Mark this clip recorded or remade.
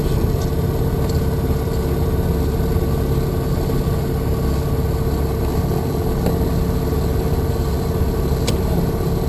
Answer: recorded